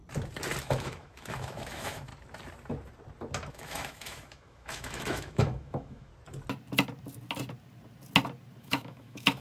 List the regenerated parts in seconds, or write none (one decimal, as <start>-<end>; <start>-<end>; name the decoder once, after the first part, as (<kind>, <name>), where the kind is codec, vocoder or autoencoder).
0.6-2.1 (autoencoder, DAC-VAE); 3.5-6.1; 8.6-9.4